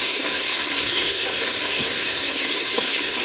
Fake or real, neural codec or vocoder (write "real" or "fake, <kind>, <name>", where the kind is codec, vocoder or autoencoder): fake, codec, SNAC